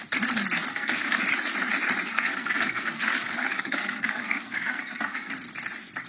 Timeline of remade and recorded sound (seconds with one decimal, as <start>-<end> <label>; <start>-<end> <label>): 0.0-0.7 recorded; 0.7-1.2 remade; 1.2-2.1 recorded; 2.1-5.3 remade; 5.3-6.1 recorded